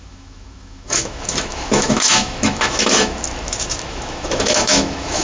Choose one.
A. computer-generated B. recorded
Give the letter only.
A